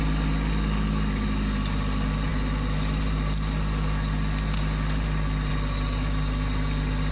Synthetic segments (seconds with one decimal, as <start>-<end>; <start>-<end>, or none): none